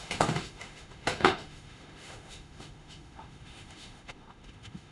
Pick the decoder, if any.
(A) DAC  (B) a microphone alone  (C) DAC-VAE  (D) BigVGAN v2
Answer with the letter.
C